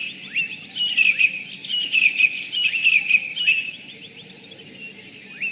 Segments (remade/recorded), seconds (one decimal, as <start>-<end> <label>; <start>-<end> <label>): 0.0-5.5 recorded